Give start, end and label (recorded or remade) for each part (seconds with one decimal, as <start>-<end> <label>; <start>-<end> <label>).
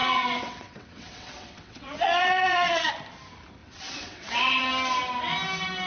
0.0-2.9 remade; 2.9-3.6 recorded; 3.6-4.7 remade; 4.7-5.9 recorded